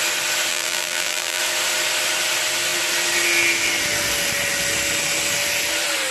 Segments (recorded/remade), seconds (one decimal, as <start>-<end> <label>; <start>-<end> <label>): 0.0-0.5 recorded; 0.5-1.4 remade; 1.4-6.1 recorded